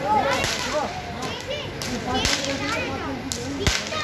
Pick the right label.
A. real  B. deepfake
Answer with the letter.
A